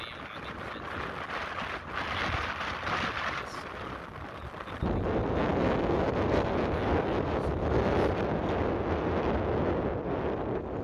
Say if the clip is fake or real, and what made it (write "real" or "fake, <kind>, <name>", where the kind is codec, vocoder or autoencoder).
real